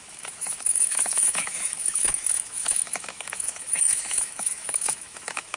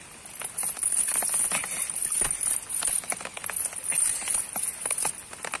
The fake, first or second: first